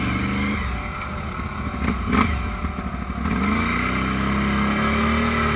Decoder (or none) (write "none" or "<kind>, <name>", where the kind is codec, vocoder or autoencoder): none